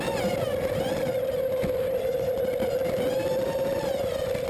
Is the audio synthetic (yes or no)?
no